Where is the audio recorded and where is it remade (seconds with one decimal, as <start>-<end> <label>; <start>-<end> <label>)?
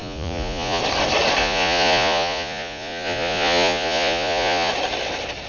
0.0-0.8 remade; 0.8-1.4 recorded; 1.4-4.7 remade; 4.7-5.5 recorded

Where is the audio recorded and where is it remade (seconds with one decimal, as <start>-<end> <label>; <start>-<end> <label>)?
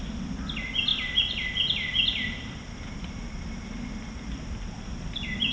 0.0-5.5 recorded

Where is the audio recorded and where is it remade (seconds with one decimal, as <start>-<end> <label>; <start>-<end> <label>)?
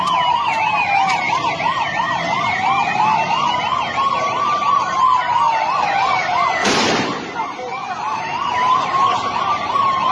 0.0-10.1 recorded